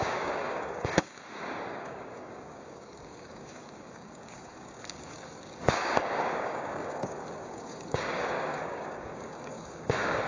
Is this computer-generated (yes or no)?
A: yes